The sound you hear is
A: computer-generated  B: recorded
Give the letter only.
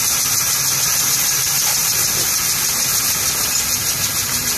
B